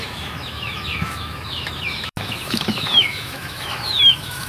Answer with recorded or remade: remade